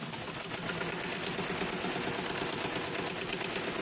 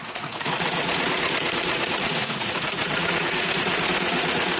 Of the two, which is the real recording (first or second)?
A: first